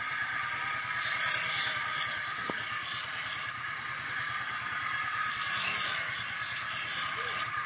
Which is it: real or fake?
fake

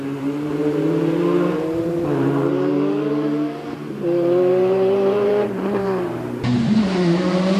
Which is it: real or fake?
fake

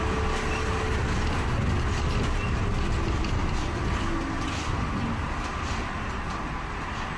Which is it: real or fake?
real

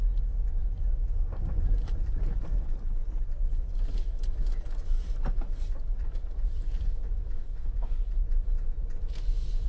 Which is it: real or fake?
real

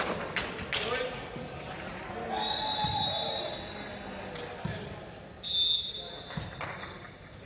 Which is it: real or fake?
real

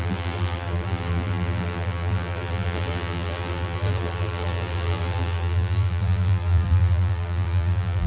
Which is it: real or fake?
fake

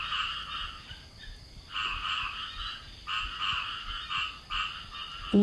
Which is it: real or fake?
real